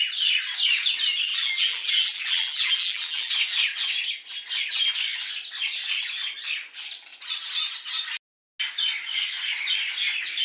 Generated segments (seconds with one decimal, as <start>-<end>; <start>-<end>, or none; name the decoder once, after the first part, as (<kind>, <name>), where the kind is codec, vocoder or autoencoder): 1.3-3.3 (vocoder, BigVGAN v2)